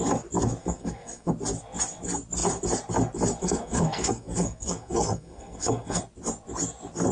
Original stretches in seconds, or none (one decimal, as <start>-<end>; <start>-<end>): 0.0-0.6; 1.3-3.4; 6.0-7.1

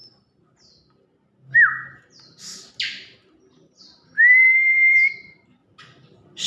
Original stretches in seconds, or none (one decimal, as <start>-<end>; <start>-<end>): 0.0-3.8; 5.6-6.5

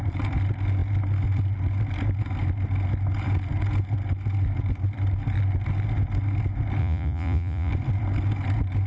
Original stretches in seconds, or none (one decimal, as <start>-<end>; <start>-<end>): 0.0-6.8; 7.7-8.9